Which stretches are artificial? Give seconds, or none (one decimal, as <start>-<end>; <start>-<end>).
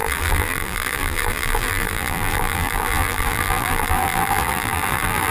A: 0.0-5.3